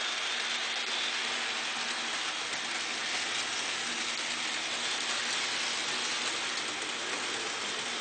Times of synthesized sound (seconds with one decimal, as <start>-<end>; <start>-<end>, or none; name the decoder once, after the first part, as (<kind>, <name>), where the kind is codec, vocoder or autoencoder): none